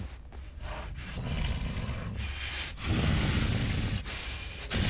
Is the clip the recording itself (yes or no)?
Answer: yes